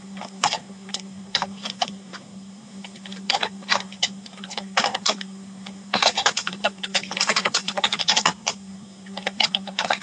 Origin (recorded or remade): remade